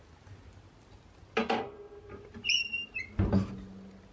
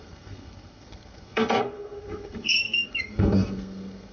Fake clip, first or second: second